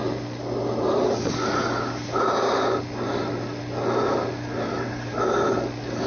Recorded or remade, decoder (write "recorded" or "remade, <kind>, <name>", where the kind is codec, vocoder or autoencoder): recorded